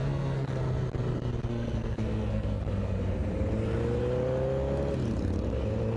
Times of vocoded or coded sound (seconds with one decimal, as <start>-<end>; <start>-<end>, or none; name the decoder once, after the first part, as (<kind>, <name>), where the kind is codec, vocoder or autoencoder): 0.0-0.6 (codec, SNAC); 1.5-2.6